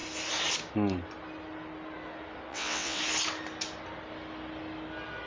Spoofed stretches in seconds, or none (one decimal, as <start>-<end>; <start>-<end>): 2.5-3.0